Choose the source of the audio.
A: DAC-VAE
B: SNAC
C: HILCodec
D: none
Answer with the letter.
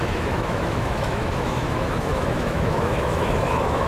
A